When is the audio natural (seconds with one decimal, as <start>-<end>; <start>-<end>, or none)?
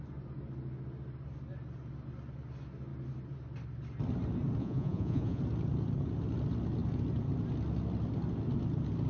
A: 0.0-4.6; 5.4-9.1